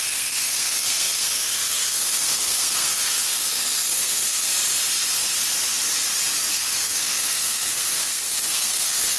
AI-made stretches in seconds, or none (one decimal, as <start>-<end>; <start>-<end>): 0.0-4.5; 6.5-9.2